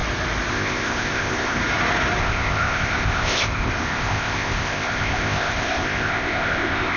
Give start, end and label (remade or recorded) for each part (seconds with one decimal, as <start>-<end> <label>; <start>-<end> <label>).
0.0-0.5 recorded; 0.5-1.6 remade; 1.6-2.2 recorded; 2.2-7.0 remade